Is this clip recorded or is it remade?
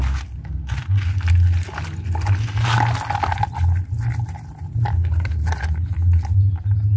recorded